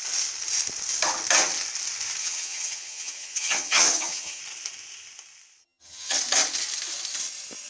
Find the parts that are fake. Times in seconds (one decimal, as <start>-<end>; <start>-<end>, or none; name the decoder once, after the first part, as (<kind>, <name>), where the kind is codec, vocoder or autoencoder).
2.2-4.4 (vocoder, HiFi-GAN); 5.6-6.2